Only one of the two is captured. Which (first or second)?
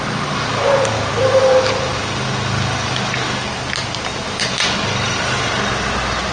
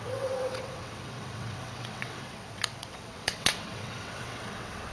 first